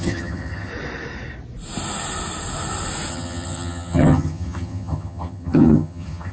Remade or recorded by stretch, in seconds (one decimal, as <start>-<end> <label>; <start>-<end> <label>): 0.0-0.7 remade; 0.7-3.1 recorded; 3.1-6.3 remade